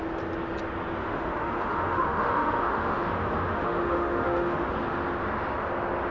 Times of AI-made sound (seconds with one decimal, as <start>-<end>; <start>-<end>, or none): 1.0-4.7